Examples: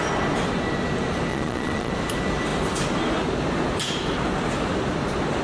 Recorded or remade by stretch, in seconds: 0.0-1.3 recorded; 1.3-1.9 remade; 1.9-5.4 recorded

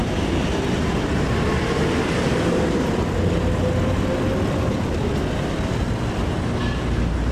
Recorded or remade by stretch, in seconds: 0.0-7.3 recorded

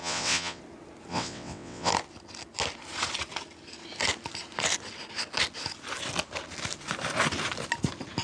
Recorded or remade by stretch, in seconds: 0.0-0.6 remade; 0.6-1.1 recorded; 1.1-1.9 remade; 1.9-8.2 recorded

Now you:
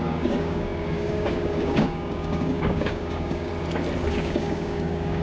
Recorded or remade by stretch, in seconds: 0.0-3.5 remade; 3.5-4.1 recorded; 4.1-5.2 remade

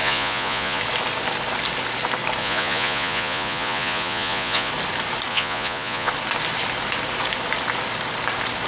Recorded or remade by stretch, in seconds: 0.0-0.8 remade; 0.8-2.4 recorded; 2.4-4.7 remade; 4.7-5.3 recorded; 5.3-6.1 remade; 6.1-8.7 recorded